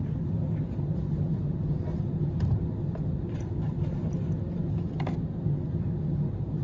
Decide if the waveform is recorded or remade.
recorded